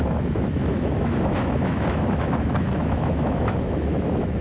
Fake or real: fake